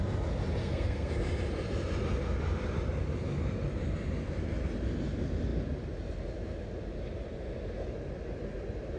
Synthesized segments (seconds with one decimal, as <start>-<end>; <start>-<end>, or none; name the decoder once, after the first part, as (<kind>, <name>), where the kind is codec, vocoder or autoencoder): 0.6-1.1 (codec, SNAC)